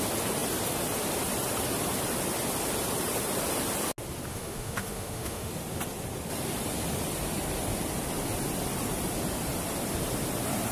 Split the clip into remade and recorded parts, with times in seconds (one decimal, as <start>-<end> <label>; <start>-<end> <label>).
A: 0.0-4.3 recorded; 4.3-5.5 remade; 5.5-10.7 recorded